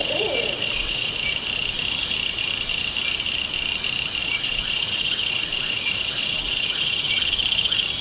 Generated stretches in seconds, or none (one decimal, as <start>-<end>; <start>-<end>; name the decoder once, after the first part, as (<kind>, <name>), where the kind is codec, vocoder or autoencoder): 0.0-1.1 (vocoder, Vocos); 4.2-7.2

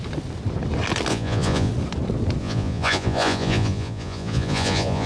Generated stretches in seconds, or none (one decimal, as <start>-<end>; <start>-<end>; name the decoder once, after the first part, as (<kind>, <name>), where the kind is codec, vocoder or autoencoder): 1.1-1.7 (vocoder, Vocos); 2.4-5.1

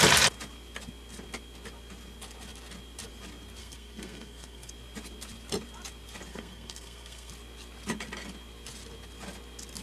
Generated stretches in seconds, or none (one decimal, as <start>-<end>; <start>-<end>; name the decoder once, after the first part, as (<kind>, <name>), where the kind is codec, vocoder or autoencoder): 3.6-4.7 (codec, SNAC); 6.3-7.3

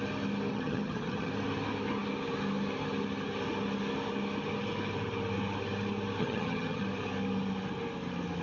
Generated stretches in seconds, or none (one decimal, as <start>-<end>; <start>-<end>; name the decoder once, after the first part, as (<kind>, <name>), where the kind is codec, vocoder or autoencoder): 0.5-1.3 (vocoder, HiFi-GAN); 6.2-6.8

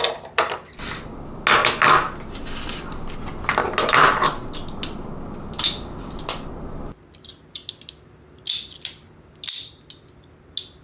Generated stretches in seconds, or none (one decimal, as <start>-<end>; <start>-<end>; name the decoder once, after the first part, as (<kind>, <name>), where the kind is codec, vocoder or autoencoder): none

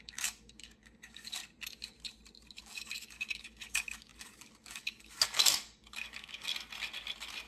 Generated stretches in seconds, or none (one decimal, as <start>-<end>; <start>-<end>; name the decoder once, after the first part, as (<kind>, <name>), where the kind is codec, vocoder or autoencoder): 0.0-1.4 (codec, DAC); 2.6-6.5